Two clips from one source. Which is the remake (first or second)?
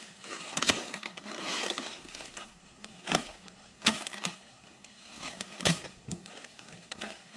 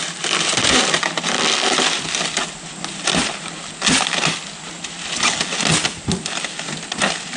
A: first